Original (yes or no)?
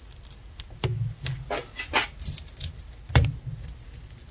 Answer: yes